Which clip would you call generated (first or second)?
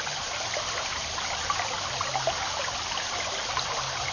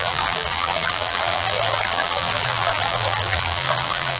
second